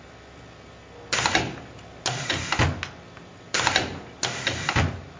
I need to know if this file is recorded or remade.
recorded